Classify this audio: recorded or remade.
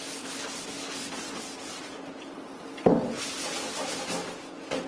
recorded